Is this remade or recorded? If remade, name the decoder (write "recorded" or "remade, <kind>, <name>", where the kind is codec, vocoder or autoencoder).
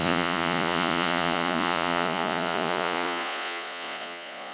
remade, vocoder, Vocos